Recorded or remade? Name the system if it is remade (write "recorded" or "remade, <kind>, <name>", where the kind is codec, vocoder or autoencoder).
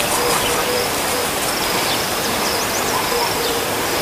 recorded